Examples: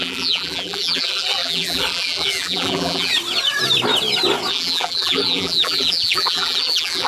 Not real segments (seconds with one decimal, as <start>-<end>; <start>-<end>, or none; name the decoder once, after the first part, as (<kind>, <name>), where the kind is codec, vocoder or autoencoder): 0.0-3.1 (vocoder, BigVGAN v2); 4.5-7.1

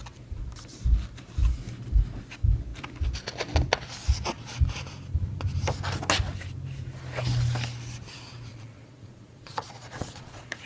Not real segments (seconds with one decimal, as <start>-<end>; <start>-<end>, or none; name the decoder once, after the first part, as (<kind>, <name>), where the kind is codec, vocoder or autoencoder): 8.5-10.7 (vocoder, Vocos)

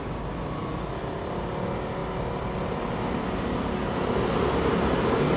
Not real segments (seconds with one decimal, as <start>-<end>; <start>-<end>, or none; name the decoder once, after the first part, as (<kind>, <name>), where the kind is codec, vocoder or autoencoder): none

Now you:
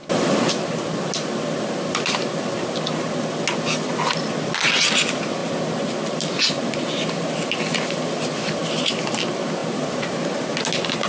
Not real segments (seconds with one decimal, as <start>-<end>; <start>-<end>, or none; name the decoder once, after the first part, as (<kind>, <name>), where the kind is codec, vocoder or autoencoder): none

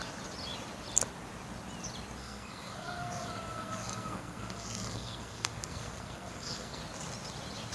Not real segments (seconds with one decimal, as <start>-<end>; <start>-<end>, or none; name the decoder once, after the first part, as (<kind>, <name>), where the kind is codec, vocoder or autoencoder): 2.2-6.8 (codec, SNAC)

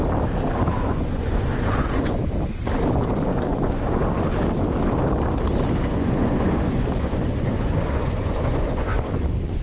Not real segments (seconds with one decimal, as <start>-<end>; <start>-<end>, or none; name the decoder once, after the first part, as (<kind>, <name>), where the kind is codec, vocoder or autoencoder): 0.7-2.2 (vocoder, Vocos); 3.3-4.0; 5.9-9.6

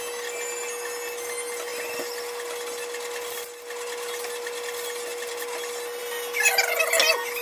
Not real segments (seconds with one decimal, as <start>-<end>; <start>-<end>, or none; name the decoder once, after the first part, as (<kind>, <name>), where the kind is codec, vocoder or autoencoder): none

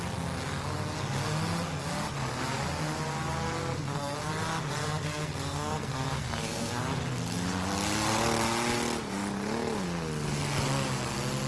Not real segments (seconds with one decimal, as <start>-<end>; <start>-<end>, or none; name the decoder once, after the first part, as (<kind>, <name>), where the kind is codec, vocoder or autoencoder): 3.6-4.3 (codec, SNAC); 4.8-6.8